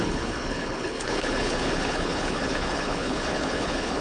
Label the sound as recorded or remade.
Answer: remade